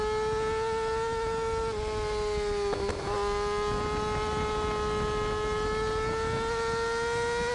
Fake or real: real